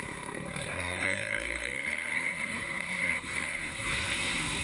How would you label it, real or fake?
fake